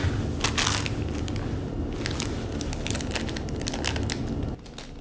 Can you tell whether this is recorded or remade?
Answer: recorded